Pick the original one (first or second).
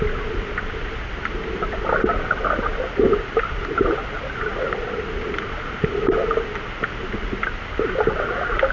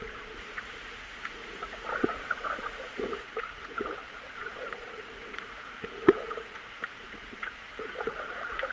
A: first